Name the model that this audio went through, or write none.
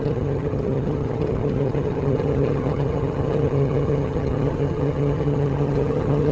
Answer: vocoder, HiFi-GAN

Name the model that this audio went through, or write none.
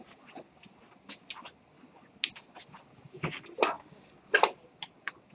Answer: none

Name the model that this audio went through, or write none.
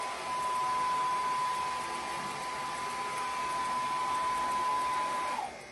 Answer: none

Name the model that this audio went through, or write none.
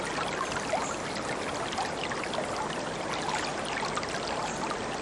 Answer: none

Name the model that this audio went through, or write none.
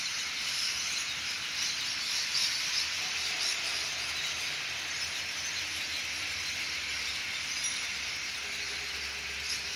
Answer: none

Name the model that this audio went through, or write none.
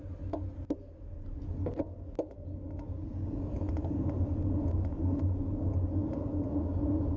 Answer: none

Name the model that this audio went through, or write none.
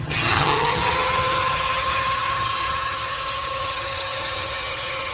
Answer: vocoder, HiFi-GAN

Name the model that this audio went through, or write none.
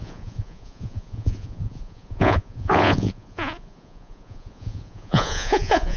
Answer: vocoder, Vocos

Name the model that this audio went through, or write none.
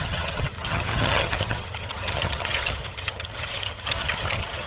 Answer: vocoder, HiFi-GAN